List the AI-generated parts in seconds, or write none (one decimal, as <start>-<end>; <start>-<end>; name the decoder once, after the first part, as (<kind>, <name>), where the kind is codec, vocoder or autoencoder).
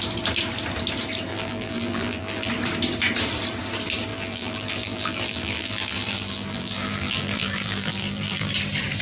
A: 1.3-2.5 (vocoder, BigVGAN v2); 4.1-8.5